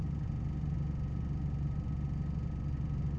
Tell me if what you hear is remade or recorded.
recorded